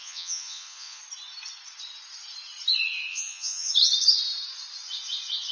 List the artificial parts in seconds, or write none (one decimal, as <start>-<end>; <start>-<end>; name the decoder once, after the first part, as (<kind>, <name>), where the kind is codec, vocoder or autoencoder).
0.0-1.0 (vocoder, Vocos); 3.1-3.7